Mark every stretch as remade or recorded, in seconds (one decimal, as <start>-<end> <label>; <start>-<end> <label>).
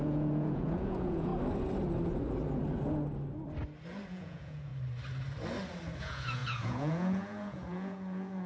0.0-1.3 remade; 1.3-4.1 recorded; 4.1-4.7 remade; 4.7-6.0 recorded; 6.0-8.5 remade